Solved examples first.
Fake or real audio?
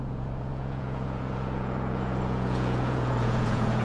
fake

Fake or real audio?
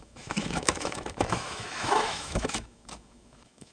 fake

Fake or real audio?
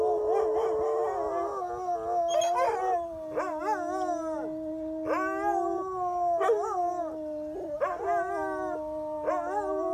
real